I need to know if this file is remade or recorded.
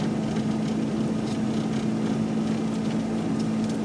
recorded